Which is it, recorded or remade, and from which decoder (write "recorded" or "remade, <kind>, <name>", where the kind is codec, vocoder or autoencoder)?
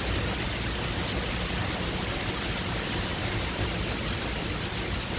recorded